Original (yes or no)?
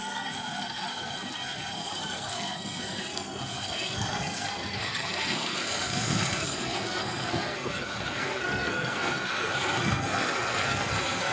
no